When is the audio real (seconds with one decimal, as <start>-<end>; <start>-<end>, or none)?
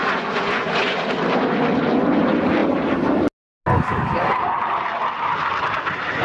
1.0-6.2